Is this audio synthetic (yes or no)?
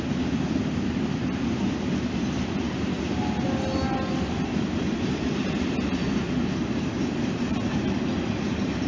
no